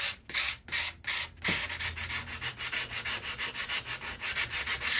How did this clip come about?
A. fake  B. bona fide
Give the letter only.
B